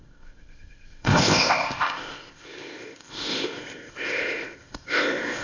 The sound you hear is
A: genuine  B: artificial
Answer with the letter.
B